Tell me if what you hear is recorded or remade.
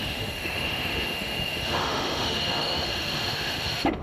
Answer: remade